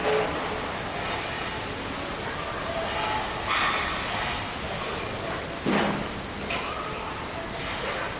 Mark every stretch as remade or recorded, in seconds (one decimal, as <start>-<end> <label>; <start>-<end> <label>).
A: 0.0-8.2 recorded